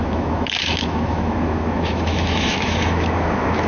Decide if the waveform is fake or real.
fake